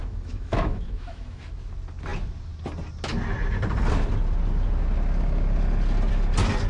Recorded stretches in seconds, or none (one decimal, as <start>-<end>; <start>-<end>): 1.4-6.7